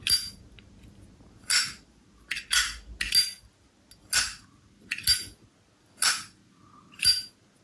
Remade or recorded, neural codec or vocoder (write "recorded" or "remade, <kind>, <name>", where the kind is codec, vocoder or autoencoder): recorded